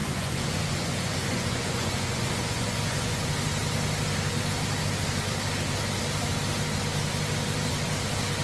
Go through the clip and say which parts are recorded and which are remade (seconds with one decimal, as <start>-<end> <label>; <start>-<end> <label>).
0.0-3.3 remade; 3.3-8.4 recorded